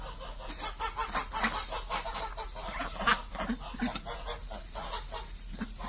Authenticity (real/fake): real